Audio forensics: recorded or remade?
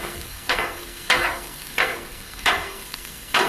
remade